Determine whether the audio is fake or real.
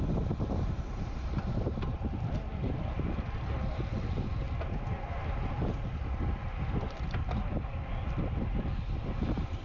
real